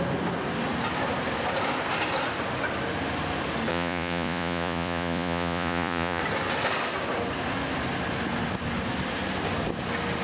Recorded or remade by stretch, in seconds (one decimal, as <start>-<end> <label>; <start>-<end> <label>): 0.0-3.7 recorded; 3.7-6.2 remade; 6.2-10.2 recorded